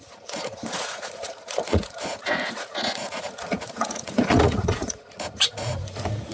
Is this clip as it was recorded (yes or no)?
no